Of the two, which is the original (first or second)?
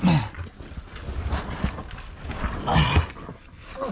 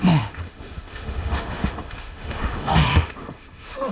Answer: first